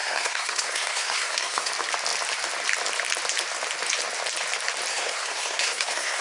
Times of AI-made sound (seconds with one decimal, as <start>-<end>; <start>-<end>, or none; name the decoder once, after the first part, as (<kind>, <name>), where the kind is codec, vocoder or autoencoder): 0.0-1.7 (codec, SNAC); 4.9-6.2